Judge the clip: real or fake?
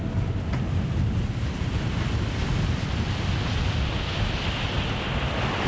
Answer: real